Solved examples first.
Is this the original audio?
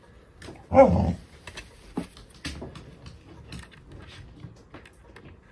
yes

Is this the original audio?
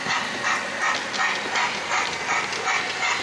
yes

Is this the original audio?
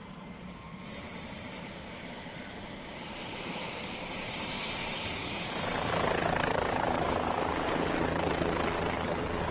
no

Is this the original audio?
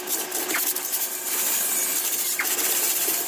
no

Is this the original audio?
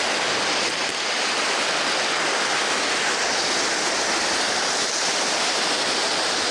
yes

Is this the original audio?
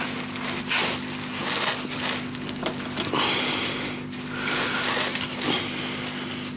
yes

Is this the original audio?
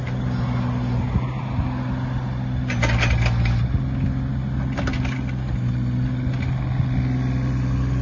yes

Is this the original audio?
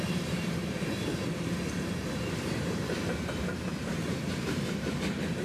no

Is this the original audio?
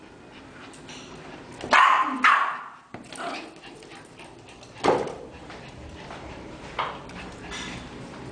no